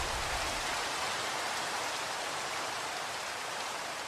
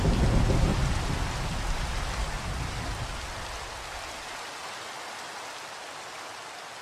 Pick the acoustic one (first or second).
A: second